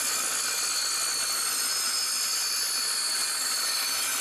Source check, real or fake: real